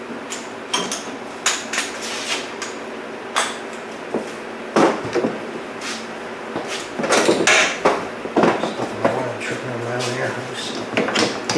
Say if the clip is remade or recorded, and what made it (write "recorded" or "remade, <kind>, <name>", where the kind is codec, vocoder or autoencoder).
recorded